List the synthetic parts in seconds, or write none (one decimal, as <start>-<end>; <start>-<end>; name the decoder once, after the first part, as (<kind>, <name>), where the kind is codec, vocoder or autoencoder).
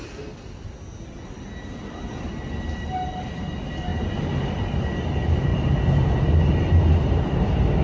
none